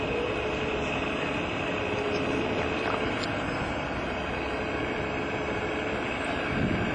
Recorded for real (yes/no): yes